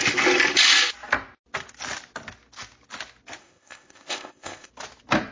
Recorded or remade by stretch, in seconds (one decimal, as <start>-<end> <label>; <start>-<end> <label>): 0.0-3.4 recorded; 3.4-4.7 remade; 4.7-5.3 recorded